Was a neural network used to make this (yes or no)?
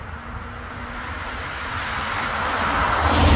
no